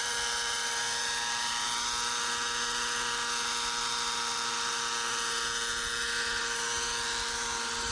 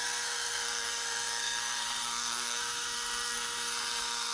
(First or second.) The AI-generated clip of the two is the second